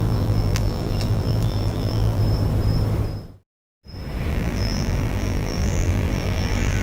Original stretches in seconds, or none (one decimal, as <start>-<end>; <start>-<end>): 2.2-4.3